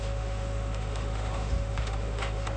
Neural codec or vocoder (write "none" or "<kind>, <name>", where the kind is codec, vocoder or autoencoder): autoencoder, DAC-VAE